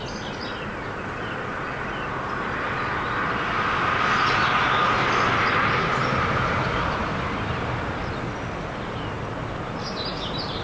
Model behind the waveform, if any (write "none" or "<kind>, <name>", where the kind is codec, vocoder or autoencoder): none